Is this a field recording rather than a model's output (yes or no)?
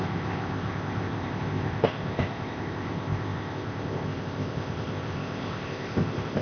no